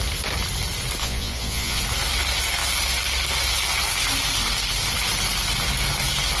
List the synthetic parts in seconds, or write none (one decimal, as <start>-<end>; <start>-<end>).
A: 1.0-1.8